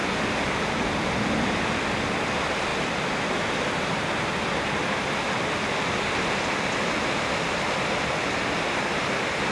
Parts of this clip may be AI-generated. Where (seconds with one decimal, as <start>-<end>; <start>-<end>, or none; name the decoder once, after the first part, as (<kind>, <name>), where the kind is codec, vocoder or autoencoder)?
none